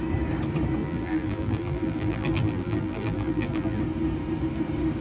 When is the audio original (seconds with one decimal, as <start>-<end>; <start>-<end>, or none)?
0.0-0.8; 3.8-5.0